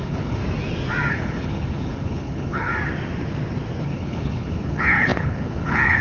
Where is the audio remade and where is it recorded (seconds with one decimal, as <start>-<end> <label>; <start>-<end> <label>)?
0.0-0.4 remade; 0.4-1.1 recorded; 1.1-2.7 remade; 2.7-3.8 recorded; 3.8-6.0 remade

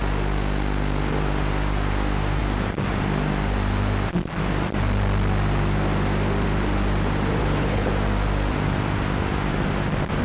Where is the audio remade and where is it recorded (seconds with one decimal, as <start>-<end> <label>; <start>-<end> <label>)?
0.0-7.4 recorded; 7.4-7.9 remade; 7.9-10.2 recorded